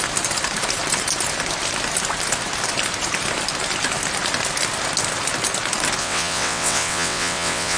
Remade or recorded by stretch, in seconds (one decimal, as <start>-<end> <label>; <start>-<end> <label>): 0.0-6.0 recorded; 6.0-7.8 remade